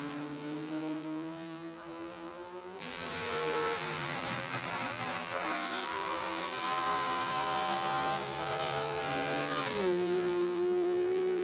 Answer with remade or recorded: remade